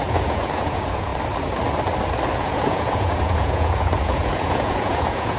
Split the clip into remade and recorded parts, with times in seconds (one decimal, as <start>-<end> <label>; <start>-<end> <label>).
0.0-1.1 remade; 1.1-2.4 recorded; 2.4-5.4 remade